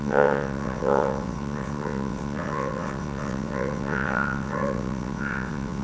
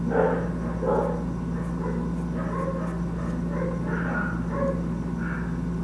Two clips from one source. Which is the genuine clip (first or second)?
second